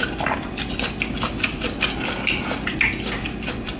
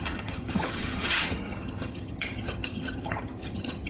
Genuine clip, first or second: first